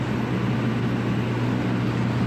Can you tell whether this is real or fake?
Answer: real